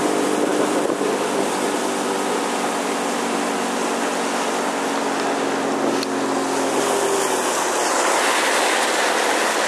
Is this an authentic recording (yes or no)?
yes